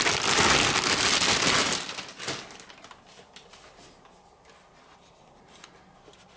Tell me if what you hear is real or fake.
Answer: real